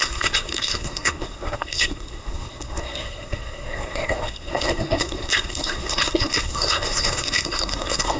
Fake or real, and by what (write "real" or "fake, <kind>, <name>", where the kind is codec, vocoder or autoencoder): fake, codec, SNAC